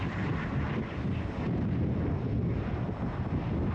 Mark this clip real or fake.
real